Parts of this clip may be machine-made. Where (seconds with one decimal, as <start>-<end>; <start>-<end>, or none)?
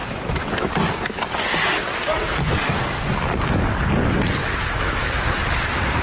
0.0-0.7; 4.4-5.4